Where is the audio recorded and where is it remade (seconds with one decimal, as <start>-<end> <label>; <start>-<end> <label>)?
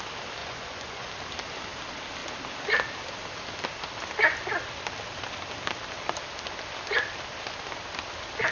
0.0-0.4 recorded; 0.4-1.1 remade; 1.1-8.5 recorded